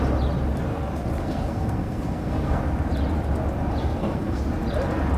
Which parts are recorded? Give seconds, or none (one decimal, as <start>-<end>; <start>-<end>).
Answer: 0.0-1.2; 2.6-3.8; 4.4-5.2